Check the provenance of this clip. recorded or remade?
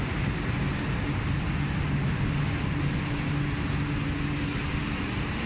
recorded